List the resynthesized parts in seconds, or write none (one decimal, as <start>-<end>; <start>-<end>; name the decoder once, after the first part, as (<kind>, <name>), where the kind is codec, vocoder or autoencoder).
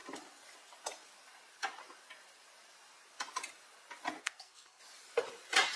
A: 4.2-4.8 (codec, SNAC)